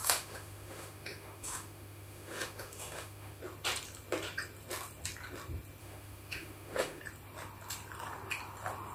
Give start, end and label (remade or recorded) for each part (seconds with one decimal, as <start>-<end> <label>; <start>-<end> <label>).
0.0-3.4 remade; 3.4-5.8 recorded; 5.8-7.0 remade; 7.0-8.9 recorded